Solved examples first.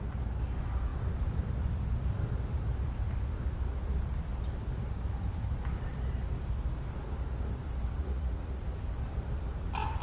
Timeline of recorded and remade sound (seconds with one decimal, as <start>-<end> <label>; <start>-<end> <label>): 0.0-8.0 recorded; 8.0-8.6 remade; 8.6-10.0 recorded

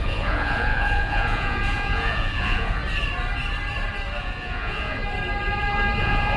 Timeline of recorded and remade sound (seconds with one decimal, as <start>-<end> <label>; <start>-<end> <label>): 0.0-2.8 remade; 2.8-4.2 recorded; 4.2-5.0 remade; 5.0-6.0 recorded; 6.0-6.4 remade

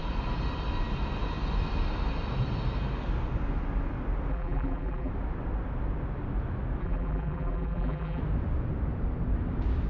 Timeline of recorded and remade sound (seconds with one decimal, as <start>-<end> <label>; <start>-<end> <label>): 0.0-4.3 recorded; 4.3-5.1 remade; 5.1-6.8 recorded; 6.8-8.2 remade; 8.2-9.9 recorded